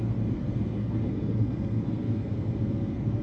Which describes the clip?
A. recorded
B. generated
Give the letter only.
B